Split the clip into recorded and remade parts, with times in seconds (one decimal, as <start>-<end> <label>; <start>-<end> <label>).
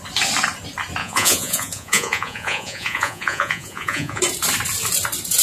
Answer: 0.0-1.0 recorded; 1.0-4.2 remade; 4.2-5.4 recorded